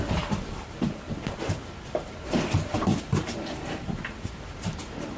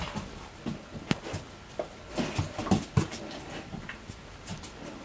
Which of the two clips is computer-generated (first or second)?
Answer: first